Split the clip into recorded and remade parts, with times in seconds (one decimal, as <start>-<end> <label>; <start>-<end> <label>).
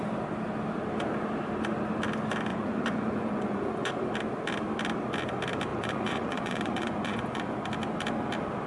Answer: 0.0-2.5 recorded; 2.5-3.9 remade; 3.9-5.7 recorded; 5.7-7.4 remade; 7.4-8.7 recorded